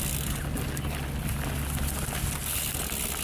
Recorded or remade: recorded